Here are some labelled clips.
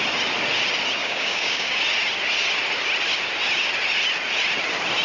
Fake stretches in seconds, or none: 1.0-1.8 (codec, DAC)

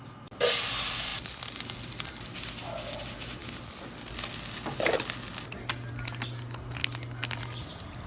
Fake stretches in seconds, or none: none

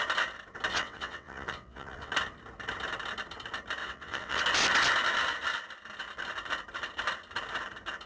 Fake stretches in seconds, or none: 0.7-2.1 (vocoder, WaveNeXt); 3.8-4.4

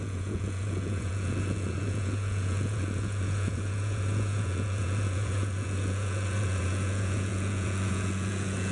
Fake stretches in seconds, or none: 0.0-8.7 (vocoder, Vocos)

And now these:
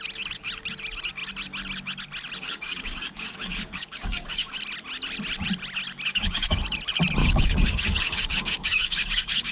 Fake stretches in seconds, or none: 2.4-4.5 (codec, DAC); 6.1-6.6; 7.2-9.5

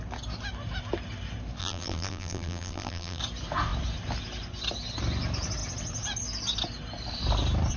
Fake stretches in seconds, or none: 1.6-3.2 (vocoder, BigVGAN v2)

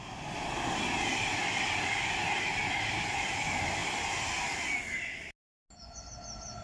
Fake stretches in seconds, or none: none